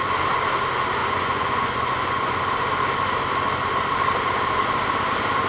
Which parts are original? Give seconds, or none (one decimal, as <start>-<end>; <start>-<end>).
0.0-1.0; 2.4-5.5